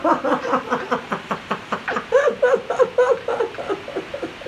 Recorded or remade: recorded